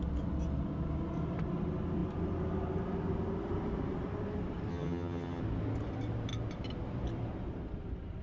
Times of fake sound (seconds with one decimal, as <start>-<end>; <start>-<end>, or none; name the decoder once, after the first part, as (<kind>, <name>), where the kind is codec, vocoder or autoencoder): 4.7-5.4 (vocoder, HiFi-GAN)